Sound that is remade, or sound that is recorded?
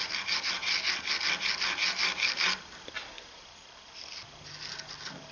recorded